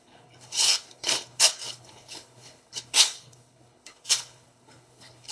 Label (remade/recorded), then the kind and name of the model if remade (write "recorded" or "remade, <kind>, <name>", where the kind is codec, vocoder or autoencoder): remade, codec, HILCodec